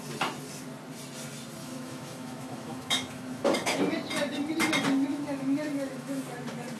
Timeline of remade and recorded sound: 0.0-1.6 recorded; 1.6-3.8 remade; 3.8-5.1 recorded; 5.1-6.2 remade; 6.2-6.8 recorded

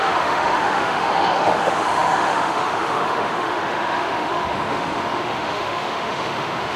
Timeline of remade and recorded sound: 0.0-6.8 remade

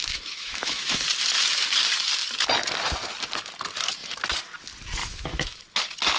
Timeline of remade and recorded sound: 0.0-1.0 remade; 1.0-5.0 recorded; 5.0-5.6 remade; 5.6-6.2 recorded

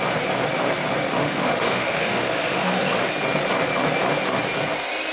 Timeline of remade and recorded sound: 0.0-1.2 recorded; 1.2-2.8 remade; 2.8-5.1 recorded

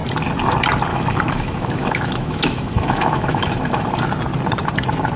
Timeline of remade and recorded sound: 0.0-0.9 recorded; 0.9-3.9 remade; 3.9-5.2 recorded

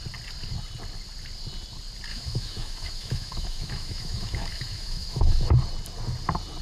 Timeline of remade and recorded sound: 0.0-2.1 recorded; 2.1-5.5 remade; 5.5-6.6 recorded

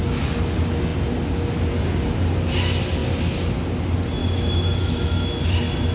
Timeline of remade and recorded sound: 0.0-4.2 recorded; 4.2-5.4 remade; 5.4-5.9 recorded

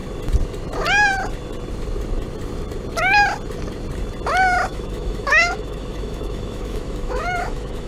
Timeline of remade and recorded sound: 0.0-4.7 recorded; 4.7-7.9 remade